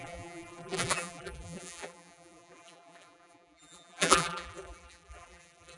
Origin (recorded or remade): remade